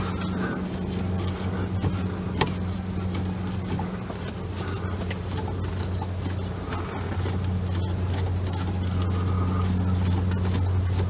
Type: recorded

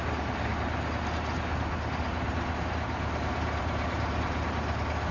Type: recorded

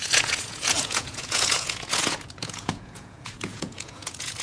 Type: remade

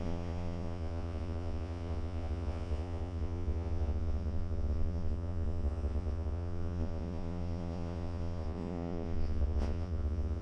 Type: remade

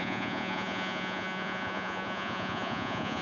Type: remade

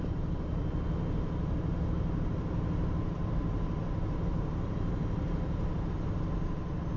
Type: recorded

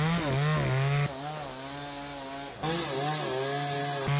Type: recorded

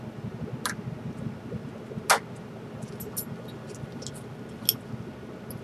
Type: recorded